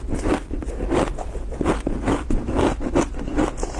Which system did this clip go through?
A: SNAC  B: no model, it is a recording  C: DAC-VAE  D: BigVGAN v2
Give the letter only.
B